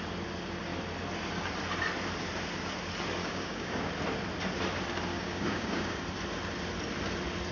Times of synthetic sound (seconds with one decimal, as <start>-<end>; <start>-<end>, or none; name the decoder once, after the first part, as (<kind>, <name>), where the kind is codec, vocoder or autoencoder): 3.2-3.9 (codec, DAC); 5.1-6.0